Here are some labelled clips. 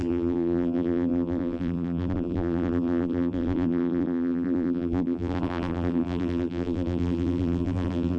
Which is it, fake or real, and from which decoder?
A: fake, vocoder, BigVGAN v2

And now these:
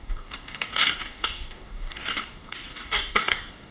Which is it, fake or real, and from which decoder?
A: fake, codec, DAC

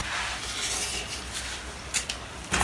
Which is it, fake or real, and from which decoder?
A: real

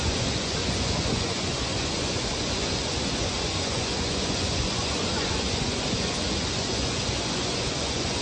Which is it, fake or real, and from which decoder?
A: fake, vocoder, Vocos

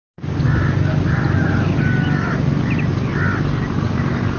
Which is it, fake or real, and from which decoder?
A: real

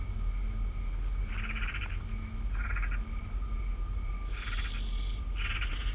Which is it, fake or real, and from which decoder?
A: real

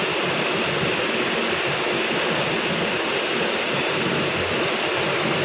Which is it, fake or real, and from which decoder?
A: real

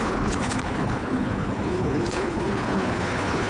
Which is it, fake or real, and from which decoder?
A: fake, codec, HILCodec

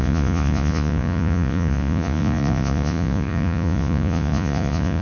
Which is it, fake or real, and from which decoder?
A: fake, vocoder, Vocos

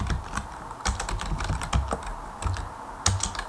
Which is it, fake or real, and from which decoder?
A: real